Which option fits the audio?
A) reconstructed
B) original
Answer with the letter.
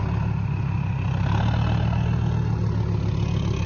B